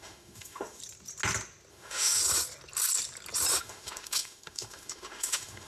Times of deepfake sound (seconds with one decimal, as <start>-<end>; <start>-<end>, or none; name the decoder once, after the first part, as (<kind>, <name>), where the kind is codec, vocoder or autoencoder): 0.0-0.8 (autoencoder, DAC-VAE); 1.7-2.2; 3.6-5.7